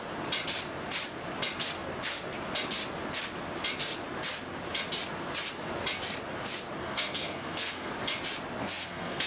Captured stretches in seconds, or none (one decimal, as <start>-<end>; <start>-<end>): 0.0-6.8; 7.9-8.6